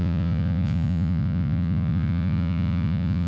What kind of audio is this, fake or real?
fake